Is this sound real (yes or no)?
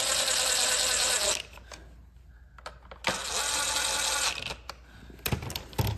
yes